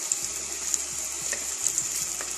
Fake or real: real